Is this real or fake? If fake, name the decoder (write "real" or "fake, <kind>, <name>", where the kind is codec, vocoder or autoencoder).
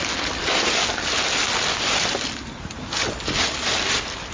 real